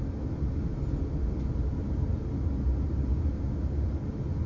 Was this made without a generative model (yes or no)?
yes